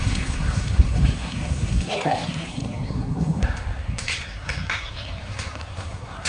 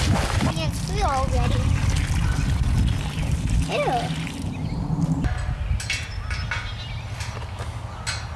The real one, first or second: second